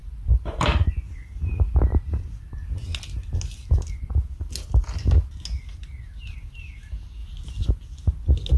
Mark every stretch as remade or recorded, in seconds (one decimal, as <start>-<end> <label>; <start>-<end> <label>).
0.0-0.9 remade; 0.9-1.9 recorded; 1.9-2.5 remade; 2.5-8.6 recorded